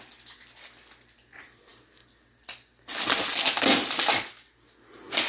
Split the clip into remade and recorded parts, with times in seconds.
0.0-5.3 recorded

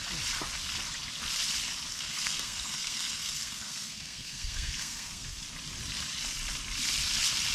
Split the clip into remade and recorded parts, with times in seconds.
0.0-1.9 recorded; 1.9-5.4 remade; 5.4-7.5 recorded

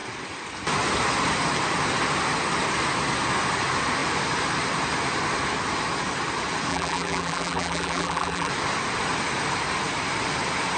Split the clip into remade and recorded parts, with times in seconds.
0.0-6.7 recorded; 6.7-8.5 remade; 8.5-10.8 recorded

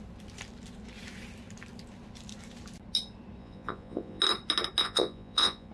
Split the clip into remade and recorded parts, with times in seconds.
0.0-3.4 recorded; 3.4-4.2 remade; 4.2-4.8 recorded; 4.8-5.7 remade

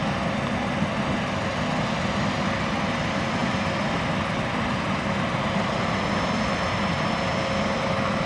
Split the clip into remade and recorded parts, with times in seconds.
0.0-8.3 recorded

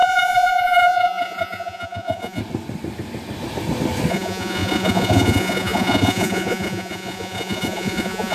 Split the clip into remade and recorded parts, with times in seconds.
0.0-2.4 remade; 2.4-4.1 recorded; 4.1-8.3 remade